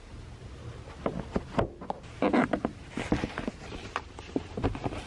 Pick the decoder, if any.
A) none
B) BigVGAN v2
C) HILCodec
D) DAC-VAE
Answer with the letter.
A